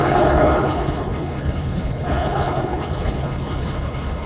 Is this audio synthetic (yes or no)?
yes